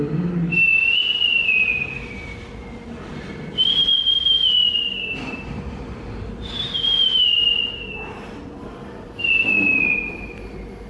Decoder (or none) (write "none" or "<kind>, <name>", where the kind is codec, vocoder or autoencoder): vocoder, BigVGAN v2